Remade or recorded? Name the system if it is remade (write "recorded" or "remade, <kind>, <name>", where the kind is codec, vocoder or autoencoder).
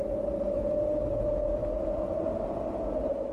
recorded